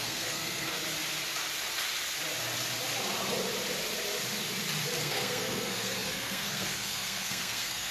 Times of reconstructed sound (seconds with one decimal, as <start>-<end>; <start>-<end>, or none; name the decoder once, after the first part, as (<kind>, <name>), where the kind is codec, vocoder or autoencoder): 0.0-0.8 (codec, SNAC); 5.0-7.9